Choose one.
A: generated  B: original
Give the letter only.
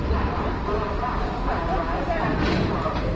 B